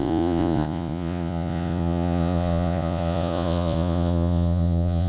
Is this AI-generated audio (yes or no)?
yes